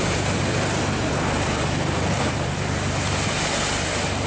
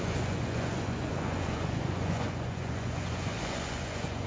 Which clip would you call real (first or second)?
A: first